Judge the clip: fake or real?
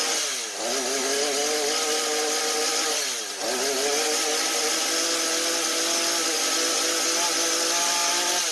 real